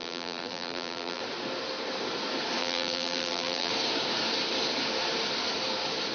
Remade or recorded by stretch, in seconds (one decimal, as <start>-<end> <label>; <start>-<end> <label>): 0.0-1.2 remade; 1.2-2.6 recorded; 2.6-3.7 remade; 3.7-6.1 recorded